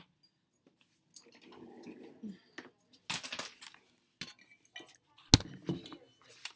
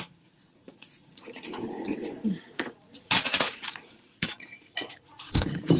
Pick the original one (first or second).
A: first